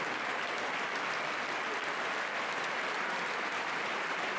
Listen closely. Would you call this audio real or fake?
fake